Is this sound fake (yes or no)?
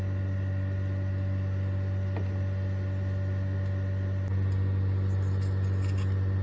no